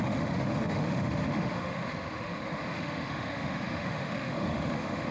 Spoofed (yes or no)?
yes